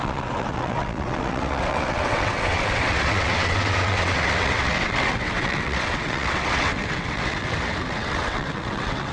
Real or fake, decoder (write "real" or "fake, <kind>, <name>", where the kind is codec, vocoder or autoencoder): fake, vocoder, WaveNeXt